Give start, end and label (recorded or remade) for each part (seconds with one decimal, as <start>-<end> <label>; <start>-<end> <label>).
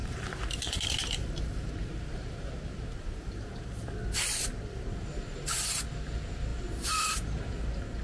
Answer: 0.0-3.9 remade; 3.9-6.5 recorded; 6.5-7.5 remade; 7.5-8.0 recorded